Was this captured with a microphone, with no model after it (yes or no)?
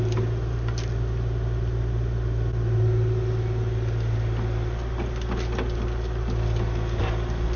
yes